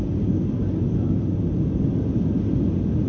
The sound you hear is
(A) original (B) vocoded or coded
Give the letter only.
A